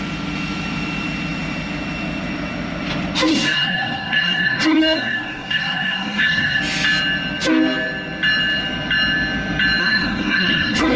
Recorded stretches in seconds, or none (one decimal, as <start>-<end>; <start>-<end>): 0.0-3.3; 6.6-9.8